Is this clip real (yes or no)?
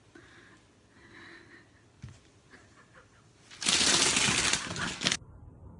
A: yes